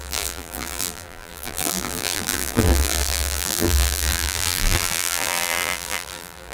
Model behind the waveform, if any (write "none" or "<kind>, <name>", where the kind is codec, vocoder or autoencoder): vocoder, BigVGAN v2